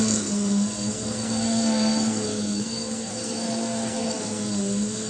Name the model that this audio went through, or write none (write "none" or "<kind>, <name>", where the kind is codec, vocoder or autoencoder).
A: codec, SNAC